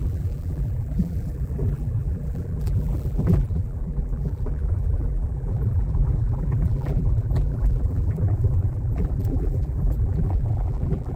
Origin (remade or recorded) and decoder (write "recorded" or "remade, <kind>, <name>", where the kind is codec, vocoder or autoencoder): remade, vocoder, BigVGAN v2